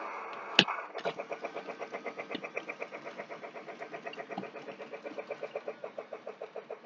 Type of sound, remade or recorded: recorded